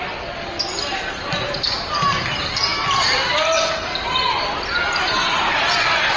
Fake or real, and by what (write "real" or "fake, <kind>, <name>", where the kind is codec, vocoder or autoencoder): real